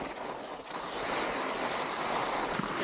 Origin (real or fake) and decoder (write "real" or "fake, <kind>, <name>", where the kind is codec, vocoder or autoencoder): real